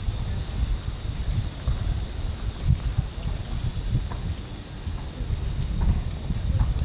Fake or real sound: real